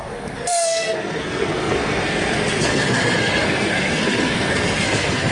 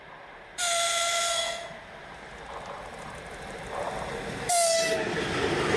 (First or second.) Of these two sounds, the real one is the second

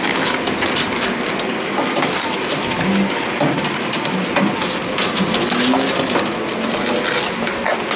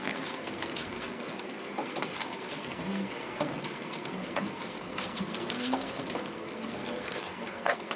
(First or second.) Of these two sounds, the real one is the first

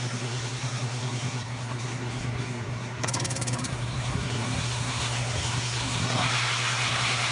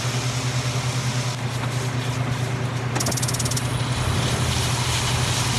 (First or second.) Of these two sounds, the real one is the second